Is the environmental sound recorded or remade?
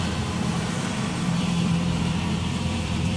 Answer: remade